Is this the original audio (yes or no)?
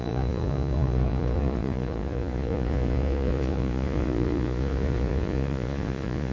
no